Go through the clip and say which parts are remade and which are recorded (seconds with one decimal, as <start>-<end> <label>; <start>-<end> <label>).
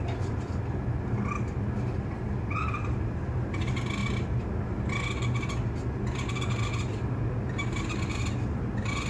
0.0-9.1 recorded